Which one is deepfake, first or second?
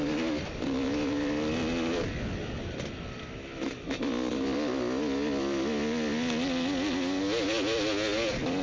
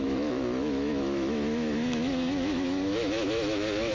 second